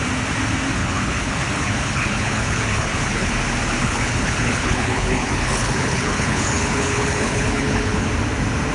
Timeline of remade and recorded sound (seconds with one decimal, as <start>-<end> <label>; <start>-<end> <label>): 0.0-0.8 recorded; 0.8-3.3 remade; 3.3-3.8 recorded; 3.8-8.1 remade; 8.1-8.7 recorded